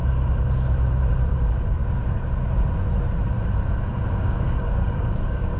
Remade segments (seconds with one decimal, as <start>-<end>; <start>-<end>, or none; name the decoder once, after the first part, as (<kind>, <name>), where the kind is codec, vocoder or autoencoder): 1.3-1.8 (codec, DAC); 4.1-5.6